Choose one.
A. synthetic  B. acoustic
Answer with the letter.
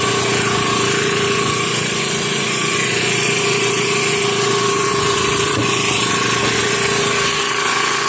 A